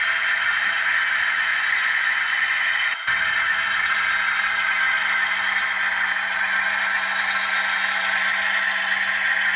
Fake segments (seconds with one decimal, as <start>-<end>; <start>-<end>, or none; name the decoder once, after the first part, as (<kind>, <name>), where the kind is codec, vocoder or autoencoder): 1.5-2.6 (vocoder, Vocos)